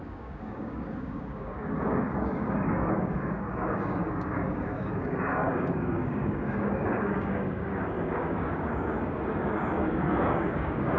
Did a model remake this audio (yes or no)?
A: yes